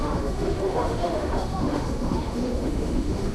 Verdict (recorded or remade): remade